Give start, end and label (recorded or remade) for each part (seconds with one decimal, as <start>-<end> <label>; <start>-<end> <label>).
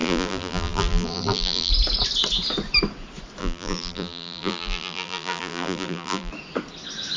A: 0.0-1.7 remade; 1.7-3.4 recorded; 3.4-6.3 remade; 6.3-7.2 recorded